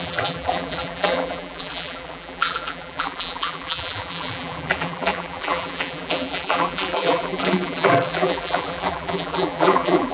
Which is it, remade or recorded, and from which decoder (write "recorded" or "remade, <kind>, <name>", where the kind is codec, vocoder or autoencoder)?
remade, vocoder, BigVGAN v2